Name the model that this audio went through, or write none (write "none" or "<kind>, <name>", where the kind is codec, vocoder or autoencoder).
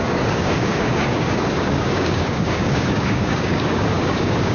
codec, DAC